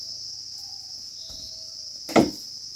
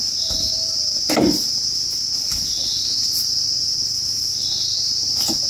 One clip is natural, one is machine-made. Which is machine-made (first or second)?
second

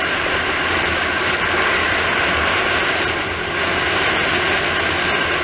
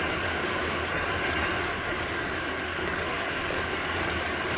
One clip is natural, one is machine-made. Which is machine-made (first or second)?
second